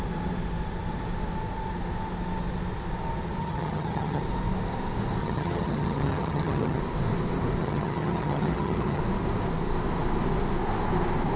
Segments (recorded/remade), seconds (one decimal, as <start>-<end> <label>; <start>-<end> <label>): 0.0-3.4 recorded; 3.4-4.2 remade; 4.2-5.2 recorded; 5.2-6.8 remade; 6.8-7.6 recorded; 7.6-9.0 remade; 9.0-11.4 recorded